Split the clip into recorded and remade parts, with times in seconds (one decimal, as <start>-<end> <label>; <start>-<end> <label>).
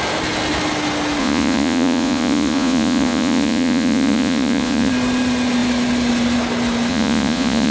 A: 0.0-1.2 recorded; 1.2-4.9 remade; 4.9-6.9 recorded; 6.9-7.7 remade